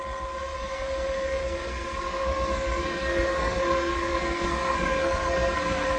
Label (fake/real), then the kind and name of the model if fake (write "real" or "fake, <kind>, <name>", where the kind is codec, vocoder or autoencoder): fake, codec, SNAC